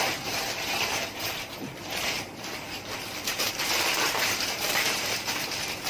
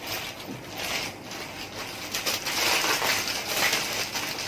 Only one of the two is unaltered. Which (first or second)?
second